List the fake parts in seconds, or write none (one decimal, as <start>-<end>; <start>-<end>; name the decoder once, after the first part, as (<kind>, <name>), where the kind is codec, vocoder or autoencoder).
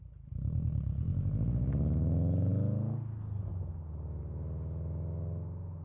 none